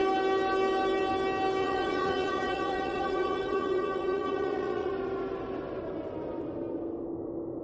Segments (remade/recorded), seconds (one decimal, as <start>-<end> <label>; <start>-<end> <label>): 0.0-1.6 recorded; 1.6-4.9 remade; 4.9-7.6 recorded